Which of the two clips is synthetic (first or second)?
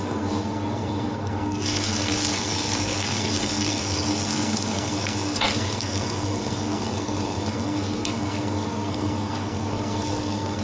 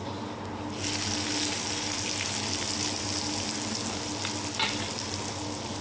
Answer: first